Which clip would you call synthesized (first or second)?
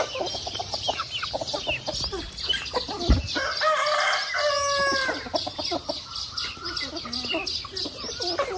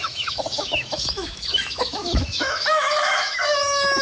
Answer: second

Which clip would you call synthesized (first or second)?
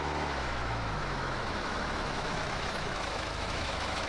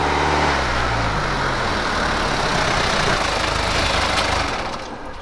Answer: first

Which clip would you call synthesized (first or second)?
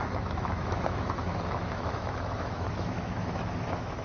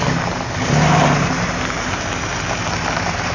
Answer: first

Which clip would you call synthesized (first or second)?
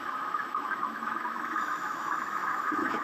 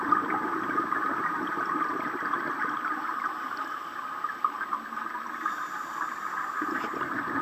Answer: first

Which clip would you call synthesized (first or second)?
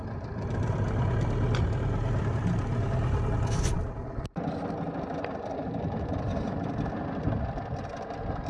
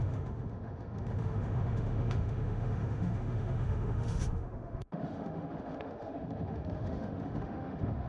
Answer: second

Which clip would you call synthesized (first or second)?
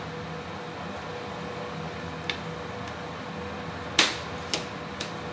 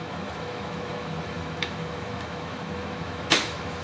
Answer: second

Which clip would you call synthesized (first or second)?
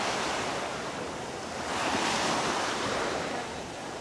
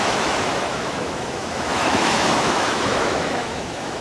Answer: second